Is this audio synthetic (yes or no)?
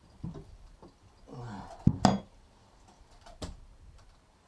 no